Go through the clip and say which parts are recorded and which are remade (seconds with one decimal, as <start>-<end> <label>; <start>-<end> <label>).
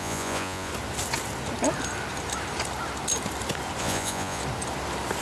0.0-0.7 remade; 0.7-3.8 recorded; 3.8-4.4 remade; 4.4-5.2 recorded